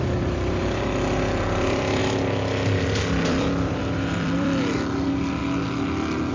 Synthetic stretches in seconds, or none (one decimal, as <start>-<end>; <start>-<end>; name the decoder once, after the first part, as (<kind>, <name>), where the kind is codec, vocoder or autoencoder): 0.0-2.0 (vocoder, BigVGAN v2); 3.3-5.4